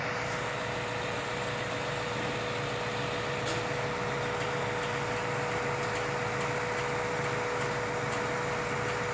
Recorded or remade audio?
recorded